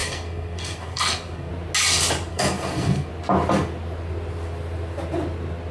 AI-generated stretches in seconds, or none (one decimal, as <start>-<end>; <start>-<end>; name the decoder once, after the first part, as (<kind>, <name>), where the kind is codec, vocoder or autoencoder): 0.0-1.5 (codec, SNAC); 2.3-3.1